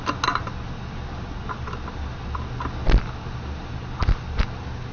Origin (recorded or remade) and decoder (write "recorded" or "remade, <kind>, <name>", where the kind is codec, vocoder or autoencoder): recorded